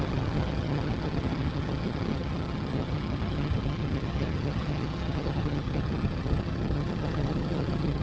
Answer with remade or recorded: remade